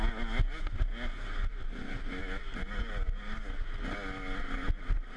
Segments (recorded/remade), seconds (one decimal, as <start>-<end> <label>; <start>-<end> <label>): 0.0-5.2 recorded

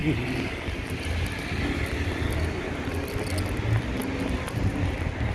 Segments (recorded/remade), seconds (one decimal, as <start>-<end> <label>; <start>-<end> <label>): 0.0-5.3 recorded

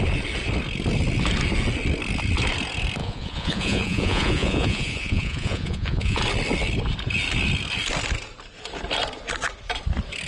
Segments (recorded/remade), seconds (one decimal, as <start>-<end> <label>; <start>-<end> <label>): 0.0-3.0 recorded; 3.0-6.2 remade; 6.2-10.3 recorded

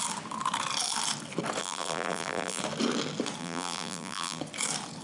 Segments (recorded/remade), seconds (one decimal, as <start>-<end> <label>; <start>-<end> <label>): 0.0-1.6 recorded; 1.6-2.6 remade; 2.6-3.4 recorded; 3.4-4.4 remade; 4.4-5.0 recorded

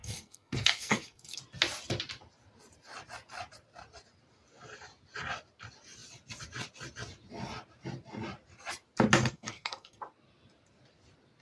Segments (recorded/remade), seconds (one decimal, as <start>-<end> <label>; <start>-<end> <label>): 0.0-1.4 remade; 1.4-9.2 recorded; 9.2-10.0 remade; 10.0-11.4 recorded

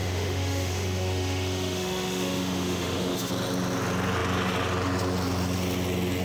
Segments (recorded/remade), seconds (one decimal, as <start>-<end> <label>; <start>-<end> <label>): 0.0-3.3 remade; 3.3-6.2 recorded

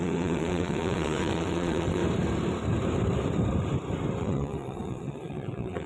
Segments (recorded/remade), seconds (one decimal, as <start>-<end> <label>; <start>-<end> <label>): 0.0-2.0 remade; 2.0-4.2 recorded; 4.2-5.9 remade

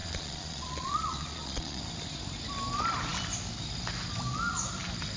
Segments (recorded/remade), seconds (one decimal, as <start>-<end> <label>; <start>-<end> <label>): 0.0-1.8 remade; 1.8-5.2 recorded